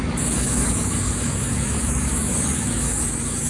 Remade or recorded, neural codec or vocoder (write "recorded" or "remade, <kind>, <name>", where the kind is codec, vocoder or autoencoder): remade, codec, DAC